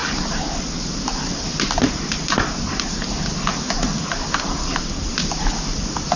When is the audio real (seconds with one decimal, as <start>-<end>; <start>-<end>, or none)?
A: 0.0-6.2